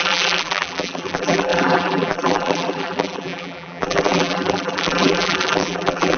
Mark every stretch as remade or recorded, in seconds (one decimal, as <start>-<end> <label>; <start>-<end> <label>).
0.0-6.2 remade